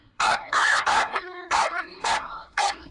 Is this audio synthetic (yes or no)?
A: yes